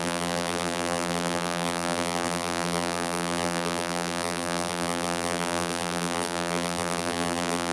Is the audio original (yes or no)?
no